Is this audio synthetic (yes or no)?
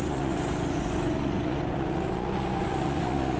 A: yes